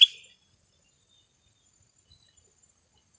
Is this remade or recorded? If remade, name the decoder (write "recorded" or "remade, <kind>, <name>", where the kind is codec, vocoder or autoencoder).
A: recorded